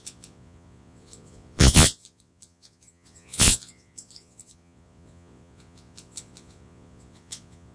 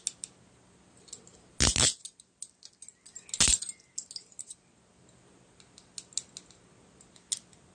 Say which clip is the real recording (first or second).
second